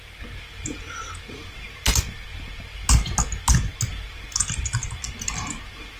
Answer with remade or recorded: recorded